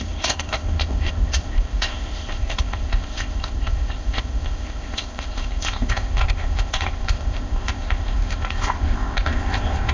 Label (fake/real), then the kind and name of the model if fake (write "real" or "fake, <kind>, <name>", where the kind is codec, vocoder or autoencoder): fake, codec, ZipCodec